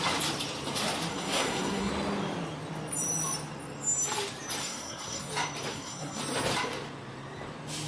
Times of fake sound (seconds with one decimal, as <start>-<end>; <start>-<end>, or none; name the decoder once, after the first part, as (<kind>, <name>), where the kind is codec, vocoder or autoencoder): 1.1-1.9 (codec, SNAC); 4.6-5.3; 5.7-6.2